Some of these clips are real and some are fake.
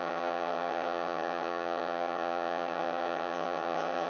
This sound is fake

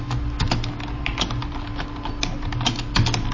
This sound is real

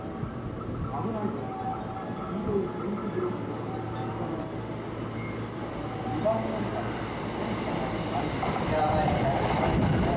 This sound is real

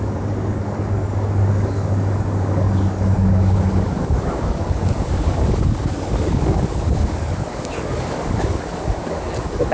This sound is fake